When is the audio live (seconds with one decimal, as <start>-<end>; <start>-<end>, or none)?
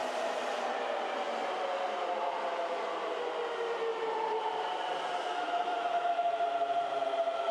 0.0-5.3; 6.4-7.5